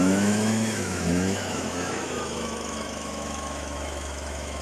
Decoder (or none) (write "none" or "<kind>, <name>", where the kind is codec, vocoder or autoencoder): autoencoder, DAC-VAE